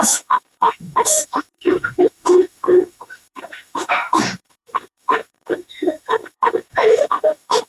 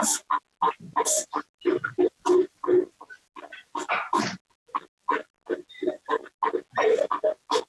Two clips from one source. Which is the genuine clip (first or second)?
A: second